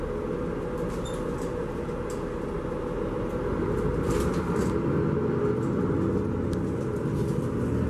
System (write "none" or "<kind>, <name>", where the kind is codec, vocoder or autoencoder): none